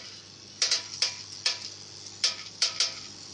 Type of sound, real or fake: real